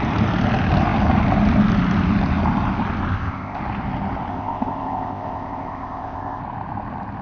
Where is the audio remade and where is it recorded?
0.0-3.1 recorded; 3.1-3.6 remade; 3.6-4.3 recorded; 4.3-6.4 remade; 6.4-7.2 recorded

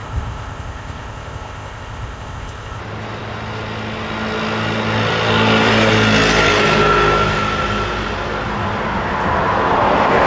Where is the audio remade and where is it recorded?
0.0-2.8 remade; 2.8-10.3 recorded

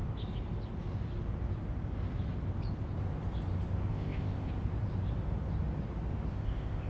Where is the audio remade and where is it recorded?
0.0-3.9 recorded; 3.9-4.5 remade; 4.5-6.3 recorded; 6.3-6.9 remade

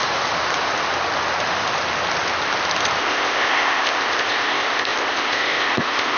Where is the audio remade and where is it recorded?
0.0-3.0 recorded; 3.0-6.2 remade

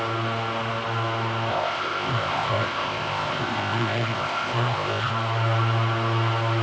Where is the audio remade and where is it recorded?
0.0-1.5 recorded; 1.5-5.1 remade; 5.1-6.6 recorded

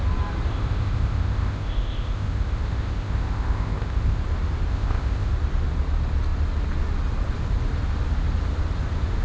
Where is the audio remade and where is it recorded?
0.0-0.5 recorded; 0.5-4.2 remade; 4.2-4.7 recorded; 4.7-5.3 remade; 5.3-9.2 recorded